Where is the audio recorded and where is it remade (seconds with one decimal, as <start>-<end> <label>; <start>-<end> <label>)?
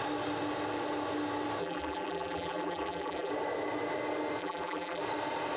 0.0-1.6 recorded; 1.6-3.3 remade; 3.3-4.4 recorded; 4.4-5.0 remade; 5.0-5.6 recorded